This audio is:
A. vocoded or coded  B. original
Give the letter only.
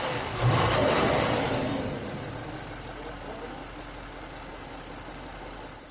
B